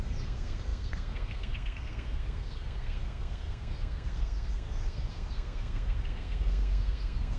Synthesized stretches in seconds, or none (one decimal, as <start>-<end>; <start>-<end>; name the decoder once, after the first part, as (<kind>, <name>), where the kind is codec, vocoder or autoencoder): 0.0-7.4 (codec, SNAC)